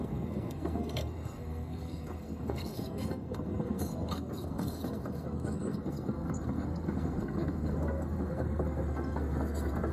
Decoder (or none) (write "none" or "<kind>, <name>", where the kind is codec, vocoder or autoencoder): codec, SNAC